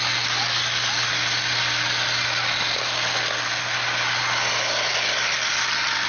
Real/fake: real